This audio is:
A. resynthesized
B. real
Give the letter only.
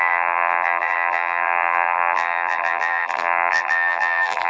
A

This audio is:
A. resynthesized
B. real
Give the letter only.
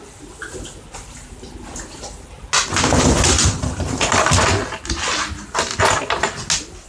B